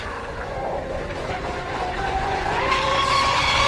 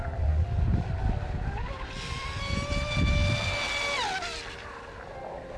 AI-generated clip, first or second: first